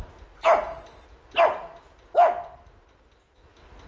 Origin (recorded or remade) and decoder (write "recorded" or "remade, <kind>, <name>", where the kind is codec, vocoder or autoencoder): recorded